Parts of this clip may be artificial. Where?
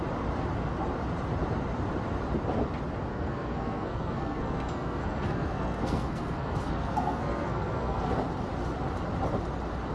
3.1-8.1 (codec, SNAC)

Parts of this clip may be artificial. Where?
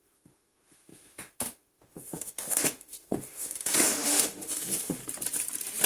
0.0-5.0 (autoencoder, DAC-VAE)